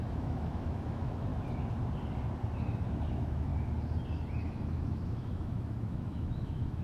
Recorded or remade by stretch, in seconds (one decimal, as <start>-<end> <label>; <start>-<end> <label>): 0.0-1.3 remade; 1.3-3.1 recorded; 3.1-3.5 remade; 3.5-4.4 recorded; 4.4-6.8 remade